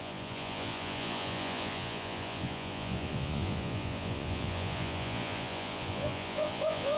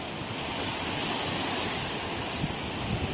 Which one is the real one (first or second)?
second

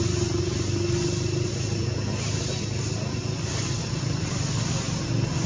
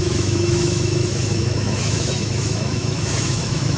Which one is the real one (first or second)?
first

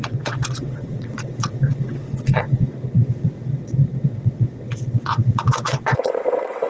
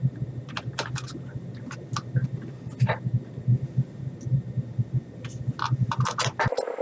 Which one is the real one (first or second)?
second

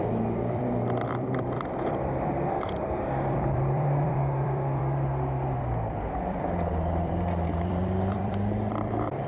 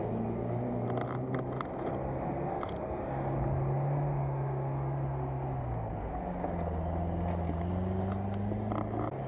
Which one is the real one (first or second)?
second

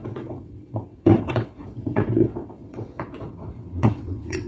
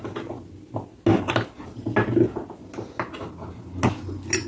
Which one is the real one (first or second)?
second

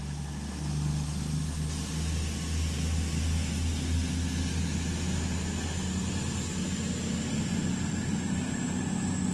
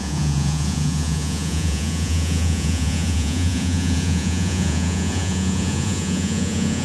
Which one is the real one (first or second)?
first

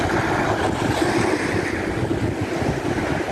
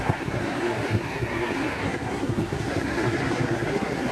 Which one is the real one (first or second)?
first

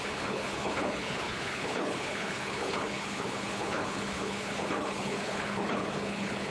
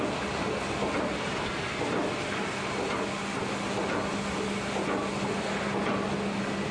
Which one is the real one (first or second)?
second